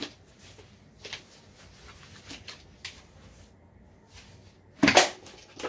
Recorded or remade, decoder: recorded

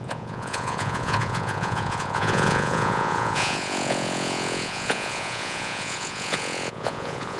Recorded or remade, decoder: remade, vocoder, Vocos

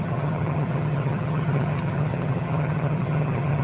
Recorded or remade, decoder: remade, vocoder, HiFi-GAN